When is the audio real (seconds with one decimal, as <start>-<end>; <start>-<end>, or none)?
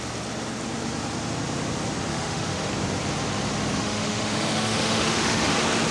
0.0-2.1; 2.7-3.8; 5.5-5.9